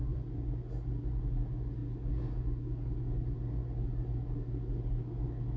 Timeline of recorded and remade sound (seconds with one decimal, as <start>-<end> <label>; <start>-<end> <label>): 0.0-0.9 remade; 0.9-5.6 recorded